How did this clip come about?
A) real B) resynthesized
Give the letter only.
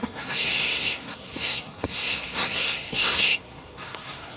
B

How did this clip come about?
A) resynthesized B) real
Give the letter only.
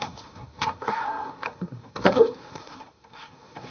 A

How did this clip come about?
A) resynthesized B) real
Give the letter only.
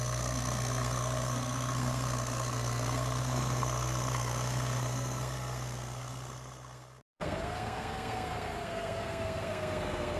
A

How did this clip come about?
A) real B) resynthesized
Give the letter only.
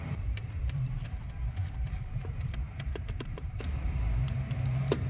B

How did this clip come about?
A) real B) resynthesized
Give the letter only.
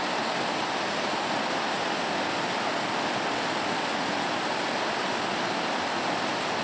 A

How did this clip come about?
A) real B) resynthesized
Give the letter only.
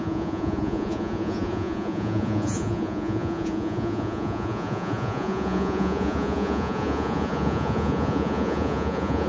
B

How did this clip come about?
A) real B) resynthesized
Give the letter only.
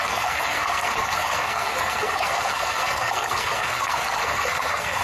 B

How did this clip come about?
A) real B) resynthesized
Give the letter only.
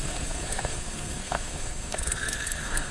B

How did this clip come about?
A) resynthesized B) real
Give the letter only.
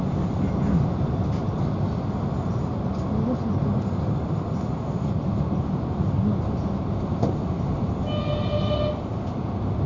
B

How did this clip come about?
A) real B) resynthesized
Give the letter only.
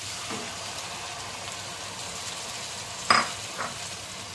A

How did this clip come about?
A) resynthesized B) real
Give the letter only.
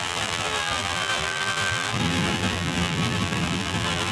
A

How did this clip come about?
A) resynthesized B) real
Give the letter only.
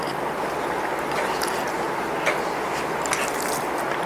B